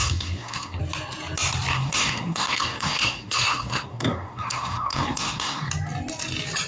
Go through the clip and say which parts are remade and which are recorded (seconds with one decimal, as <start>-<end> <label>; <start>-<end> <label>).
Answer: 0.0-0.8 remade; 0.8-1.7 recorded; 1.7-5.7 remade; 5.7-6.7 recorded